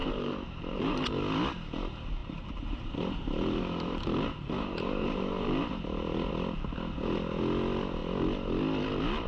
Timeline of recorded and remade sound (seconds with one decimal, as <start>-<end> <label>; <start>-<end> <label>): 0.0-1.2 remade; 1.2-2.2 recorded; 2.2-6.3 remade; 6.3-9.3 recorded